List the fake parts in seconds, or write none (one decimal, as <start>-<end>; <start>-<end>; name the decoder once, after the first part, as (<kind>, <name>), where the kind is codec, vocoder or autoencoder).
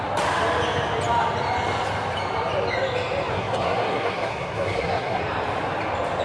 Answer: 3.3-5.2 (codec, SNAC)